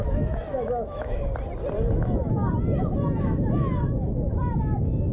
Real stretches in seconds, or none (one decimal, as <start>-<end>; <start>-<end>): 1.3-2.0; 2.4-3.2